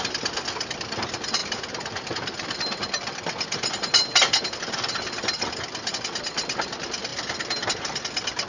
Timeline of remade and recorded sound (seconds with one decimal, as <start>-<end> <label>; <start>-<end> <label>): 0.0-1.4 recorded; 1.4-5.9 remade; 5.9-7.1 recorded; 7.1-7.7 remade; 7.7-8.5 recorded